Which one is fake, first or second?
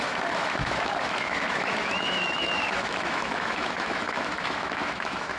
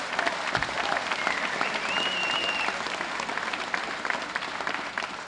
first